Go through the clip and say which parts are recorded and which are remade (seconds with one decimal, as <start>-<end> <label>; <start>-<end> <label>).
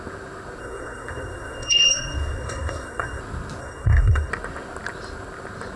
0.0-0.6 recorded; 0.6-3.2 remade; 3.2-3.6 recorded; 3.6-4.3 remade; 4.3-5.8 recorded